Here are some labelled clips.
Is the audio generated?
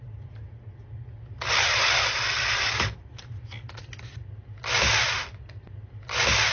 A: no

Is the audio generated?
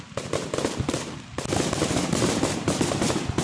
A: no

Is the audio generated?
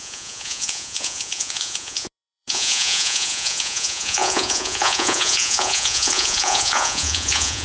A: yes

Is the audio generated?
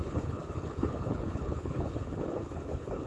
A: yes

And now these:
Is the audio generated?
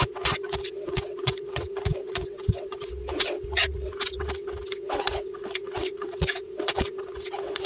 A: yes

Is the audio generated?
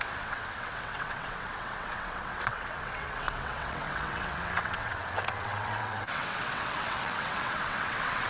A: yes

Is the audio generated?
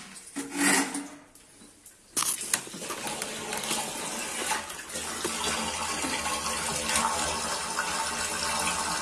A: no